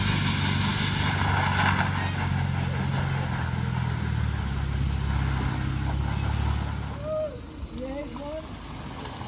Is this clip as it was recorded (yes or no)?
yes